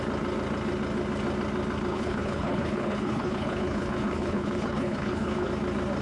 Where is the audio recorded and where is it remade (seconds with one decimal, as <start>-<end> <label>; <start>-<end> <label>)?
0.0-1.9 recorded; 1.9-5.5 remade; 5.5-6.0 recorded